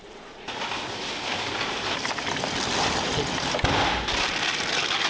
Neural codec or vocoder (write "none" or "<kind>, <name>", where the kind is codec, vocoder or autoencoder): none